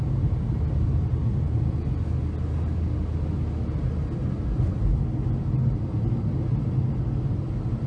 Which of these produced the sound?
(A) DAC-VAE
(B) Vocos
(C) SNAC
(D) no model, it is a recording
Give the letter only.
D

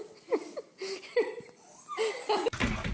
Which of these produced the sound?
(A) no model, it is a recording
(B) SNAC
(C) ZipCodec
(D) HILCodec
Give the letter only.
A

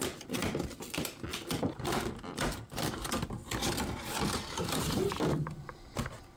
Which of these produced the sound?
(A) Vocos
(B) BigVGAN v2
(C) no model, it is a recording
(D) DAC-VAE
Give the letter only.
C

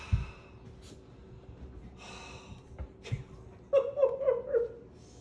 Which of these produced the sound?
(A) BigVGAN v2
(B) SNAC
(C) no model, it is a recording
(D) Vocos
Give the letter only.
C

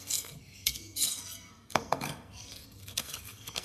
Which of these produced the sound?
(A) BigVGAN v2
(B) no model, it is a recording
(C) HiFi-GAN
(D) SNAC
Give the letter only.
D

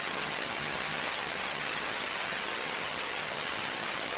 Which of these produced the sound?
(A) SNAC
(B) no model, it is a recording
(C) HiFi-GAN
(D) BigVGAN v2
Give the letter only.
C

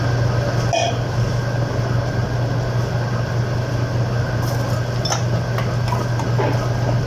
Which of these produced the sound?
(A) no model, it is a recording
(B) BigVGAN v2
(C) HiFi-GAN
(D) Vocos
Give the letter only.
A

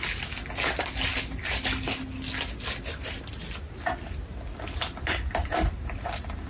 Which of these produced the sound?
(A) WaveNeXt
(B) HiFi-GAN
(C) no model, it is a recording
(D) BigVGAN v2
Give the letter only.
C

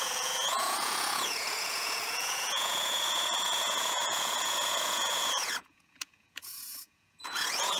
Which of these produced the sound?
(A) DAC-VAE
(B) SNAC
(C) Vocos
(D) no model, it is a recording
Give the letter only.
C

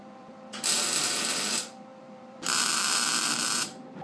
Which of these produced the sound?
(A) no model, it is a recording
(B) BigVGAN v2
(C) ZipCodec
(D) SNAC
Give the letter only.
B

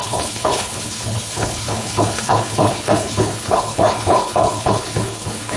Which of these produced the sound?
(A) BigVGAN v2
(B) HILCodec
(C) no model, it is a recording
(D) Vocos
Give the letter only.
B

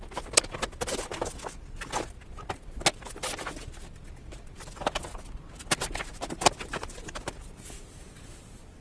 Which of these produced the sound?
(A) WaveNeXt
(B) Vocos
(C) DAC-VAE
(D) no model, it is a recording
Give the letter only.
D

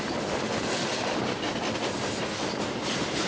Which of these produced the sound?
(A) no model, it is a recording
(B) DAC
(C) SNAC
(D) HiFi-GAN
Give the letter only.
A